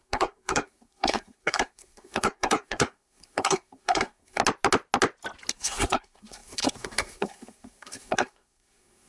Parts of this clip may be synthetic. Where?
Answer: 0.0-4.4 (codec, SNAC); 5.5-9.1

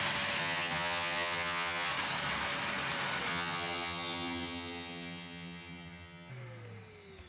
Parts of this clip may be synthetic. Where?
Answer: 0.4-1.9 (vocoder, HiFi-GAN); 3.3-6.3

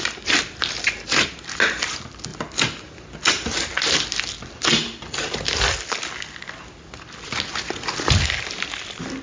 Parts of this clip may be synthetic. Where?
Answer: none